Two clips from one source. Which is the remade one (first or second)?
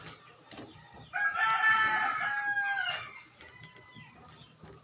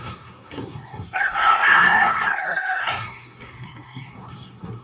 second